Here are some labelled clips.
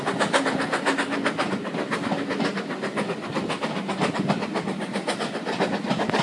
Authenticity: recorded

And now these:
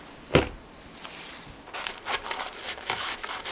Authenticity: recorded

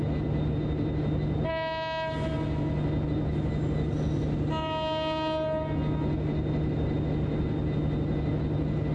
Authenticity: recorded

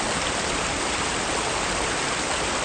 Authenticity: recorded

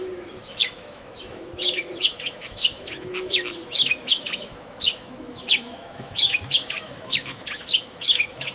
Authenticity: remade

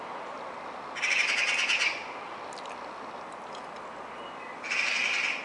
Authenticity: recorded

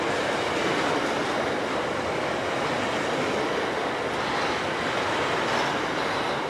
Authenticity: recorded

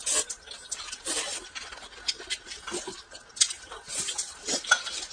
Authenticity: recorded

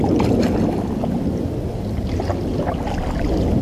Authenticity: recorded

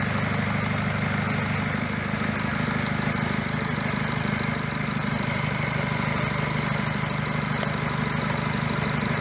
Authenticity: recorded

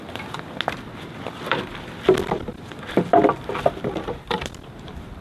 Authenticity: recorded